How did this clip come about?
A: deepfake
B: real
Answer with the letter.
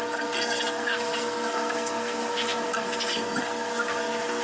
A